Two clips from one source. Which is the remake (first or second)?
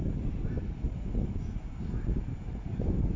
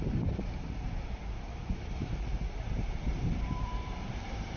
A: second